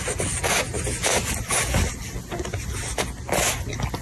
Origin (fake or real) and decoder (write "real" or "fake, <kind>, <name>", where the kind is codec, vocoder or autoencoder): real